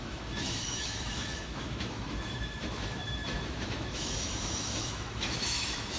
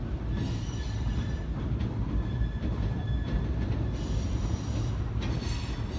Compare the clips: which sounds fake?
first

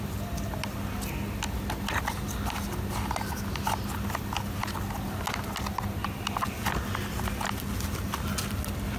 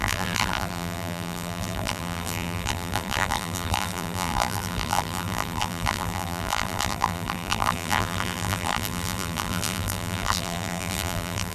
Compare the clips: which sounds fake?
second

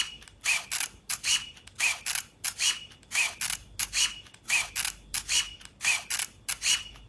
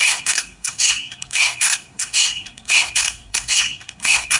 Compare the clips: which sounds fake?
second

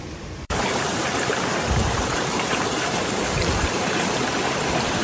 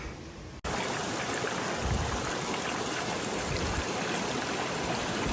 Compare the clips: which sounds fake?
first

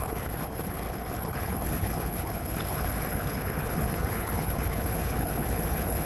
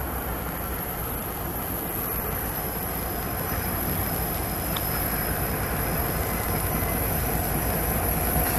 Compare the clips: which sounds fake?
first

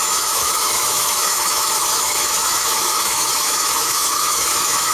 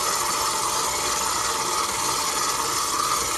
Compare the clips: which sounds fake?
first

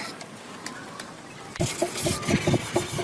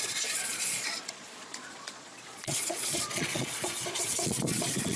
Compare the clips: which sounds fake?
second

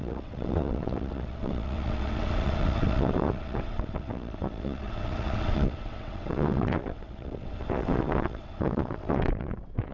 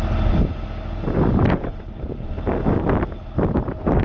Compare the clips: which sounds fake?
first